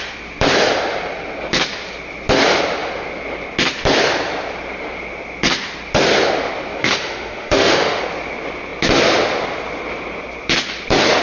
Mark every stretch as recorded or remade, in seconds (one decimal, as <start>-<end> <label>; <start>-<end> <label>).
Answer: 0.0-6.8 recorded; 6.8-8.0 remade; 8.0-11.2 recorded